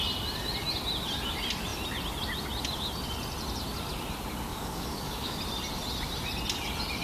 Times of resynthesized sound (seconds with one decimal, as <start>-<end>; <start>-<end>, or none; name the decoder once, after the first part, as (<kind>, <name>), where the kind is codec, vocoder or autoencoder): 4.5-5.4 (codec, DAC)